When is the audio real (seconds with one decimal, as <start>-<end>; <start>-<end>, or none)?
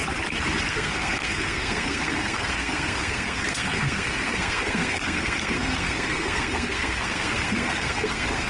0.0-0.7